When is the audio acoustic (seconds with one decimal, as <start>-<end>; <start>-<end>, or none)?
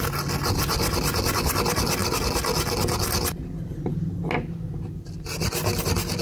0.0-6.2